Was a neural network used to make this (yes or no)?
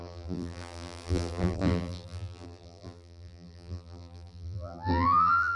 yes